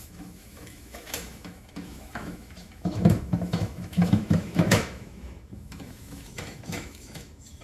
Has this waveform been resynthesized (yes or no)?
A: yes